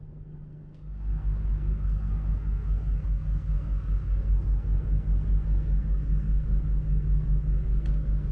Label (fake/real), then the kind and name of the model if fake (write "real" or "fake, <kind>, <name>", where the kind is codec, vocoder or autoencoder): fake, codec, SNAC